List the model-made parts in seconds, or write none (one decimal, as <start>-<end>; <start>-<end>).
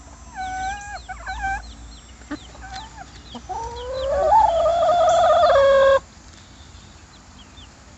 none